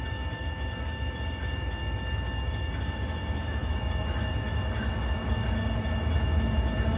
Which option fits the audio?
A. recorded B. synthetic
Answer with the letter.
B